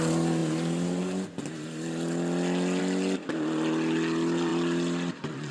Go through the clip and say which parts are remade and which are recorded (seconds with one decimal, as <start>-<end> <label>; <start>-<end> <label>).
0.0-5.5 recorded